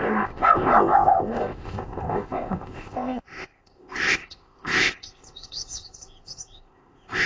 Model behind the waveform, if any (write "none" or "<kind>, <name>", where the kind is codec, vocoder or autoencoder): codec, ZipCodec